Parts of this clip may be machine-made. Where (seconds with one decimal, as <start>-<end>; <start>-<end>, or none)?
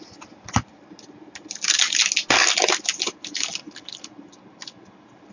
none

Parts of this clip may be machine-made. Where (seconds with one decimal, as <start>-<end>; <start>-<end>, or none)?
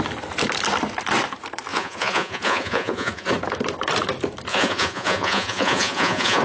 1.7-3.3; 4.5-6.4